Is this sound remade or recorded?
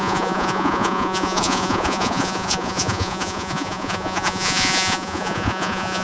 remade